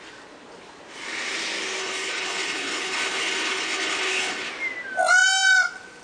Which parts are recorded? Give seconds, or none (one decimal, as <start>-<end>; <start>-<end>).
0.0-1.8; 4.5-6.0